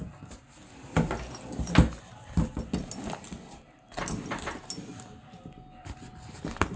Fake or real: real